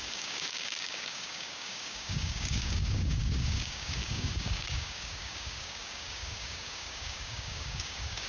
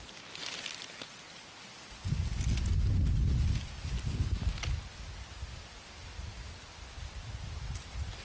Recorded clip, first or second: second